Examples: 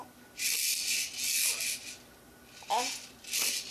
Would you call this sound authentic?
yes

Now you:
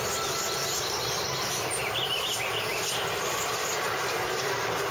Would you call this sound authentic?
yes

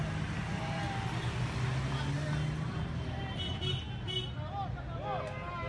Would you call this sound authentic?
yes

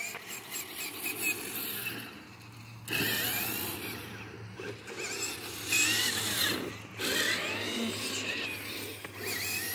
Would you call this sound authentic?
yes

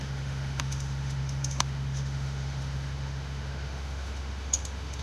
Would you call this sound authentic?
no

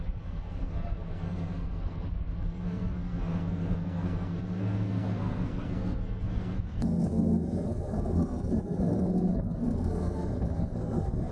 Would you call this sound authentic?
no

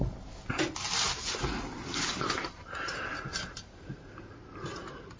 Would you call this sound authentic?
yes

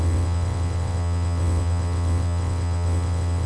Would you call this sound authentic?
no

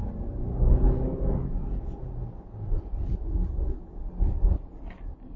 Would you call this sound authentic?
yes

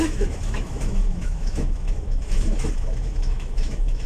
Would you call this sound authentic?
no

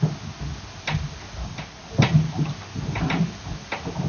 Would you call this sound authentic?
yes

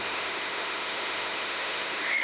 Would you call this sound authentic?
no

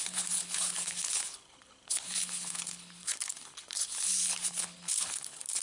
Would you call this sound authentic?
no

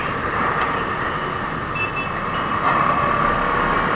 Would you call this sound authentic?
yes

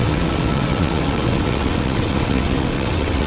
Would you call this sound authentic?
no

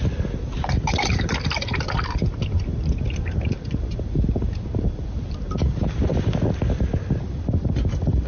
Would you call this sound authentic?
yes